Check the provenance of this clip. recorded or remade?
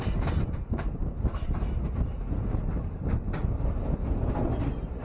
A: recorded